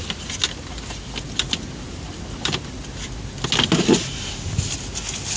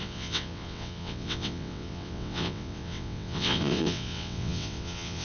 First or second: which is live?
first